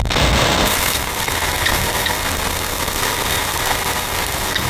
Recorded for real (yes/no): no